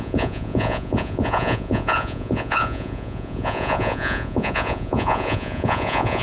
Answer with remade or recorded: remade